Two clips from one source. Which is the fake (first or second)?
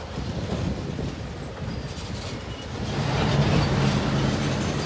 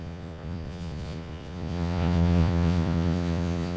second